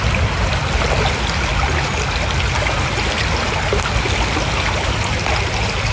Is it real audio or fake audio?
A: real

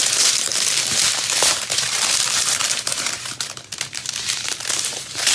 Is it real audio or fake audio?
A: fake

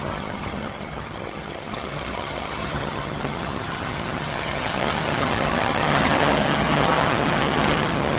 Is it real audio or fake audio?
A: fake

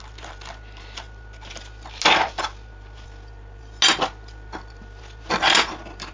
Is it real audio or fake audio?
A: real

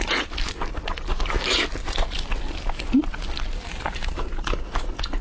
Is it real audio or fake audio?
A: real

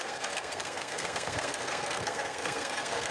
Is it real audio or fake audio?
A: fake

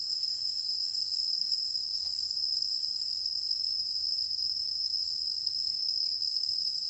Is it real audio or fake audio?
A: fake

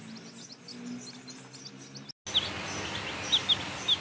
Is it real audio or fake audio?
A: real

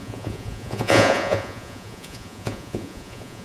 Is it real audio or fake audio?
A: fake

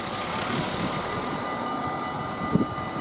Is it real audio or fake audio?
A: real